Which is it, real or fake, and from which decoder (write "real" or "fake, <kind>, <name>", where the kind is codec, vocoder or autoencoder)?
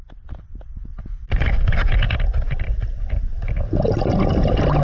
real